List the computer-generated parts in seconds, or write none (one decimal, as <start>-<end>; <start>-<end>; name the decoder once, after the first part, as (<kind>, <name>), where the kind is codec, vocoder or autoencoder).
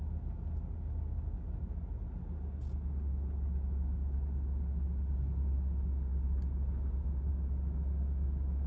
none